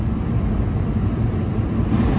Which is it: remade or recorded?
recorded